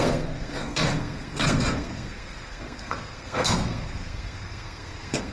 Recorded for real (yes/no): no